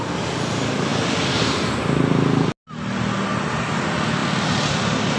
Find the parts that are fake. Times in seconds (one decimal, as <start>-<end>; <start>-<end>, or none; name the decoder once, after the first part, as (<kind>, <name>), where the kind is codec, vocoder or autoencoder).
none